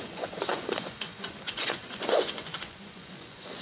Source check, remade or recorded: remade